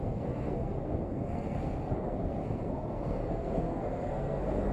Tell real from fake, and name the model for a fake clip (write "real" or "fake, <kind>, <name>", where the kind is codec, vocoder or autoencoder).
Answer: fake, codec, SNAC